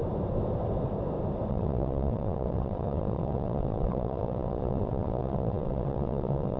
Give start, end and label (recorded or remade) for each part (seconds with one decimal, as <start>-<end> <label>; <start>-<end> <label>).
0.0-1.5 recorded; 1.5-6.6 remade